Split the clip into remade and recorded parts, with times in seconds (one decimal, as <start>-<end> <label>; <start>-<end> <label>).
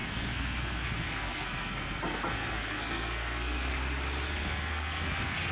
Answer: 0.0-3.7 remade; 3.7-4.3 recorded; 4.3-5.5 remade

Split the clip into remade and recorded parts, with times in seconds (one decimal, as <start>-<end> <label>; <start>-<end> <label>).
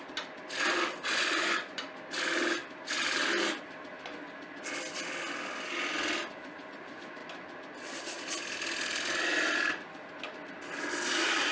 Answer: 0.0-1.1 recorded; 1.1-1.8 remade; 1.8-11.5 recorded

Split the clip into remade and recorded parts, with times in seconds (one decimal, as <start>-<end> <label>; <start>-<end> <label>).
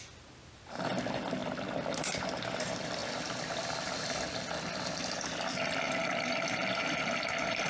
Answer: 0.0-7.7 recorded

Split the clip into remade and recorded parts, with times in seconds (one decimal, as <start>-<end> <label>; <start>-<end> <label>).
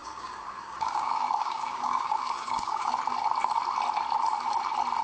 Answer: 0.0-3.0 remade; 3.0-5.0 recorded